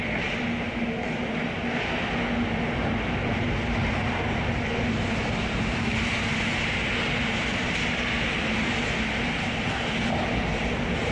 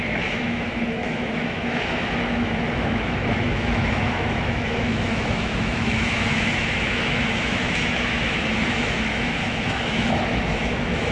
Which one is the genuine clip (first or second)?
first